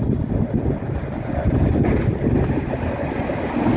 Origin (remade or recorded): recorded